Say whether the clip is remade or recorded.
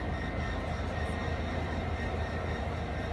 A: recorded